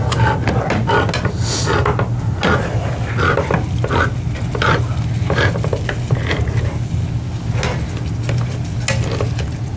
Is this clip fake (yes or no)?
no